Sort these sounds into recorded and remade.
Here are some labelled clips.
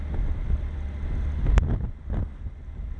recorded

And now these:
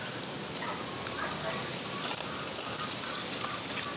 recorded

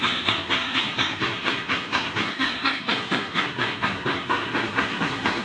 remade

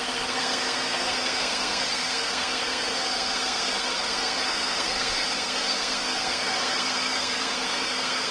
remade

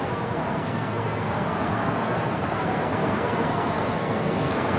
remade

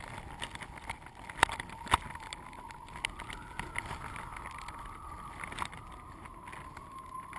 recorded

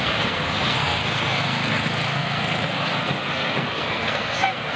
remade